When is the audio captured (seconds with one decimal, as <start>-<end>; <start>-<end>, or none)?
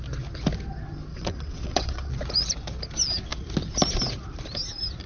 0.0-1.1; 2.1-5.1